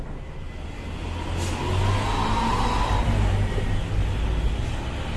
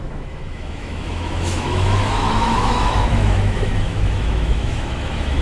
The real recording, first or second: first